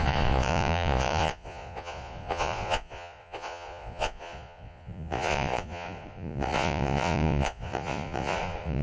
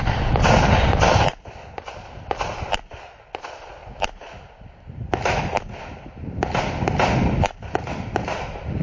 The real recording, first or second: second